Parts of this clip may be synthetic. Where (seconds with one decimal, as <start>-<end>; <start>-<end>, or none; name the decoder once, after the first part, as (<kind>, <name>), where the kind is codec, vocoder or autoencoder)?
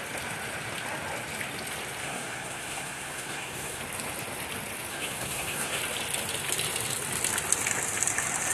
2.0-3.8 (codec, SNAC); 4.9-5.8